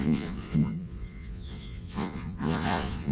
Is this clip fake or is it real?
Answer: fake